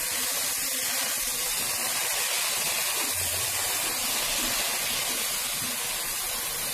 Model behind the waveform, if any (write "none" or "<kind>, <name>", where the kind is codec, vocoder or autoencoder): none